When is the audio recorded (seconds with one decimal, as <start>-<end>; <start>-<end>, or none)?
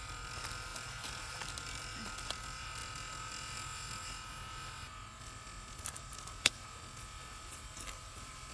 0.7-1.3; 2.8-7.2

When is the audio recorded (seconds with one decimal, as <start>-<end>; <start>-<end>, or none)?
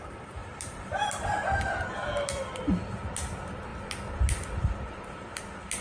0.0-0.4; 1.9-5.8